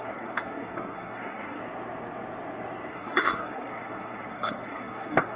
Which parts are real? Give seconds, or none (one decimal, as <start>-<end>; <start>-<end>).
1.6-2.9